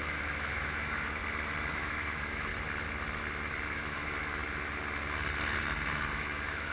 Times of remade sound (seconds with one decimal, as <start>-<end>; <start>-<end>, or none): 0.0-1.2; 1.7-2.5; 3.7-4.4; 6.1-6.7